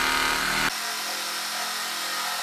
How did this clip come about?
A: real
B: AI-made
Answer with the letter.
A